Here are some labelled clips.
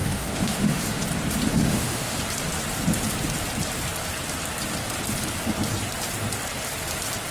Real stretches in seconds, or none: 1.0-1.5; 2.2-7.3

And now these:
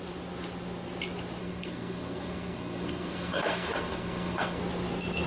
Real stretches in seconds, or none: 0.0-1.4; 4.6-5.3